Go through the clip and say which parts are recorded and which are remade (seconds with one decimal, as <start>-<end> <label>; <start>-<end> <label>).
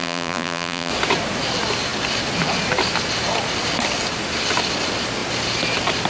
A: 0.0-0.9 remade; 0.9-6.1 recorded